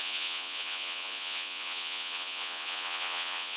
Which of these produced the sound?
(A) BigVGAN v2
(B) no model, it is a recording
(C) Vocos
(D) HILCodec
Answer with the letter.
C